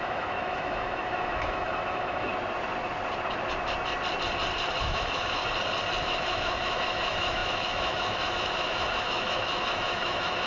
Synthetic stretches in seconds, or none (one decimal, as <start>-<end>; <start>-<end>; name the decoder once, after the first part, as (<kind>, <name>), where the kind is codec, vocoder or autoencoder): 0.0-2.3 (autoencoder, DAC-VAE); 4.8-5.4; 6.0-10.5